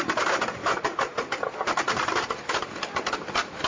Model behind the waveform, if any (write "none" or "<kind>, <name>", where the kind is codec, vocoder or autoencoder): none